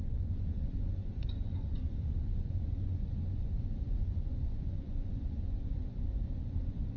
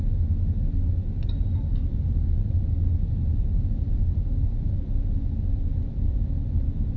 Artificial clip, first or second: first